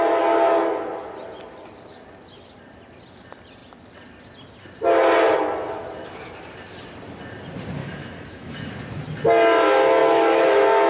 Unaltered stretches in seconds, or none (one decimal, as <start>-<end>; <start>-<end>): 0.0-7.8; 8.7-10.0